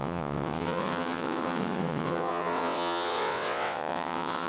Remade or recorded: remade